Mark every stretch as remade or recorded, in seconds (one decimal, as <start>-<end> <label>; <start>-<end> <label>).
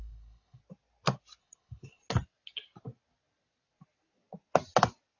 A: 0.0-0.6 remade; 0.6-1.4 recorded; 1.4-2.0 remade; 2.0-5.2 recorded